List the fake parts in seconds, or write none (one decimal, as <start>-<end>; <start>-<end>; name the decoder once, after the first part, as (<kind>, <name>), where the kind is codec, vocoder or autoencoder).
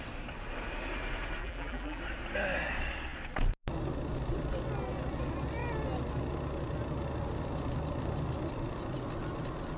1.4-2.0 (vocoder, BigVGAN v2)